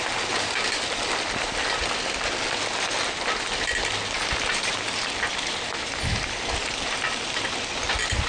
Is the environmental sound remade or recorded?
recorded